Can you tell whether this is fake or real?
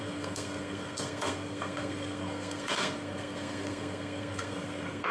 fake